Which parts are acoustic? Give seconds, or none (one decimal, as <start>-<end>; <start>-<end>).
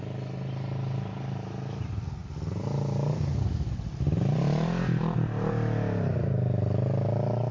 0.0-7.5